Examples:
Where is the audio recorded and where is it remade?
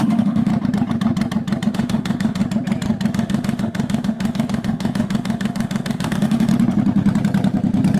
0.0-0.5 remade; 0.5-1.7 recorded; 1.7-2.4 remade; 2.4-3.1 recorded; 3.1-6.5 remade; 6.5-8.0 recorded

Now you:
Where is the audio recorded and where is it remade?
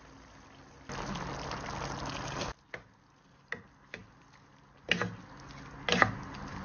0.0-6.6 recorded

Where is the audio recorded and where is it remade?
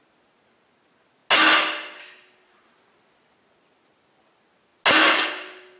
0.0-5.8 recorded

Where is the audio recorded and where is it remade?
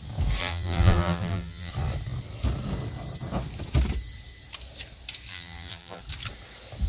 0.0-0.4 recorded; 0.4-1.7 remade; 1.7-5.3 recorded; 5.3-6.0 remade; 6.0-6.9 recorded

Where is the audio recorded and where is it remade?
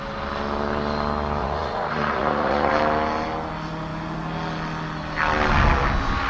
0.0-1.4 recorded; 1.4-2.7 remade; 2.7-6.3 recorded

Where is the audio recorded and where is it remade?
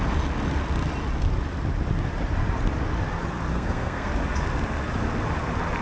0.0-3.5 recorded; 3.5-4.1 remade; 4.1-5.8 recorded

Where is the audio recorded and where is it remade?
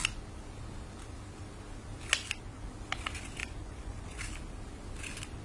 0.0-3.4 recorded; 3.4-4.2 remade; 4.2-5.4 recorded